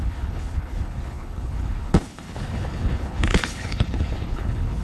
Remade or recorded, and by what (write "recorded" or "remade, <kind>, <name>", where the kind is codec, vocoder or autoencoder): remade, codec, HILCodec